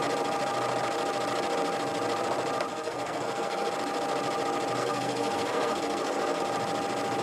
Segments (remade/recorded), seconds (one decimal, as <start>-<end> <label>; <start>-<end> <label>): 0.0-2.7 recorded; 2.7-3.7 remade; 3.7-4.8 recorded; 4.8-6.4 remade; 6.4-7.2 recorded